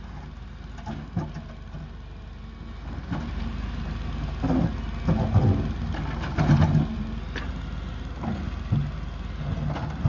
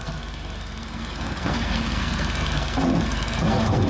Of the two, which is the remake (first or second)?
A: second